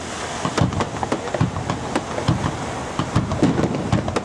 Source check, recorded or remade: recorded